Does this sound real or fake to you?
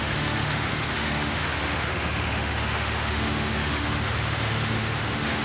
fake